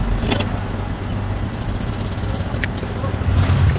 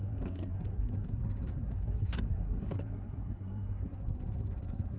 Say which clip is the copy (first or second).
second